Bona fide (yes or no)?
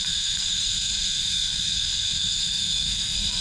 no